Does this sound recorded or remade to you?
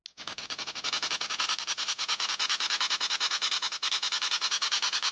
recorded